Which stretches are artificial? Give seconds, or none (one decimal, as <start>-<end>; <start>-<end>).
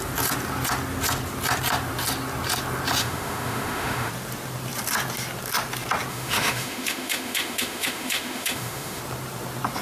3.0-4.1; 6.1-9.0